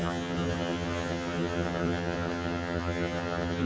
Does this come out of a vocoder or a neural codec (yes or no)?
yes